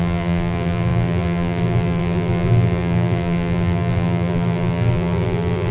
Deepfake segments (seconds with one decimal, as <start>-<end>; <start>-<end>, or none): 0.0-5.7